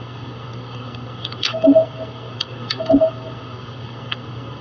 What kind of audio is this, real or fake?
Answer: fake